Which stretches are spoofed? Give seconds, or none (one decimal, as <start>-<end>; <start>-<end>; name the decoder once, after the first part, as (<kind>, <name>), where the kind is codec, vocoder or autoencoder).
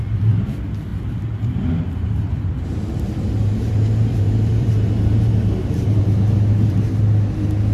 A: 2.3-6.9 (vocoder, BigVGAN v2)